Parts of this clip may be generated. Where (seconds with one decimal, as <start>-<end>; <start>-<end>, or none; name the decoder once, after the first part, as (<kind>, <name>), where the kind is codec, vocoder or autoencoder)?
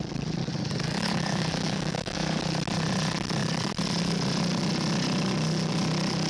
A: 0.4-2.4 (codec, DAC)